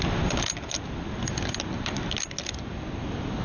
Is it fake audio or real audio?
real